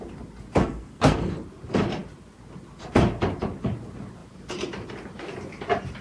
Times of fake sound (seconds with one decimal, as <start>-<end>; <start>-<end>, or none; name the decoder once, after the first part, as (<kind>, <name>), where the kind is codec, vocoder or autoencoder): 0.6-1.3 (codec, SNAC)